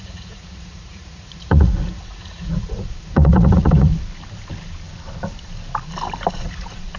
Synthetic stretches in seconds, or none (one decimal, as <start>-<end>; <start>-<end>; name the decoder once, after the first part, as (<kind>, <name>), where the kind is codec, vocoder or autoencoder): 0.0-3.9 (vocoder, Vocos); 6.3-7.0